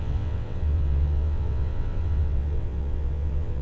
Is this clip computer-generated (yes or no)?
yes